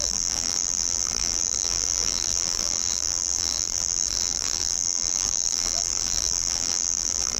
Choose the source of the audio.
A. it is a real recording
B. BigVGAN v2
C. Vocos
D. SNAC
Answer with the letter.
B